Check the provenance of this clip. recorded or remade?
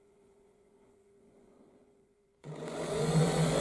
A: remade